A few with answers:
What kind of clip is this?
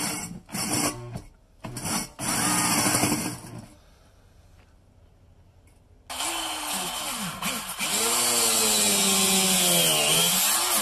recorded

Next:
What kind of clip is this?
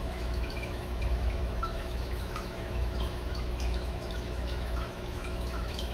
remade